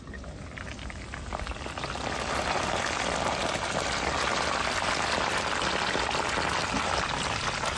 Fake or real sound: real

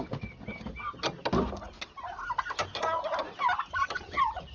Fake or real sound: real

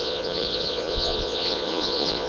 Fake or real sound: fake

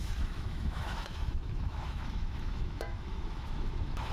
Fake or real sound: fake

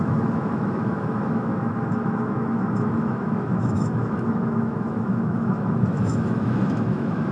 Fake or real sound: fake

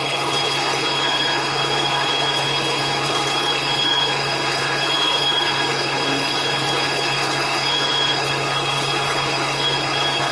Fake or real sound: fake